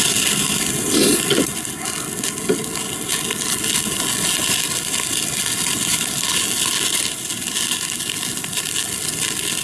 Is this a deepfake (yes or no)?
no